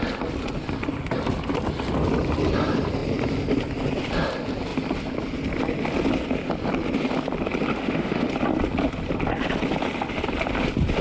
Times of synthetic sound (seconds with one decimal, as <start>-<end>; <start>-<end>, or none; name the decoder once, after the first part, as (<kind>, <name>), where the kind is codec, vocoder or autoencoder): 7.7-8.3 (autoencoder, DAC-VAE)